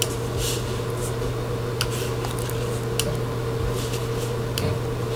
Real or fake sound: real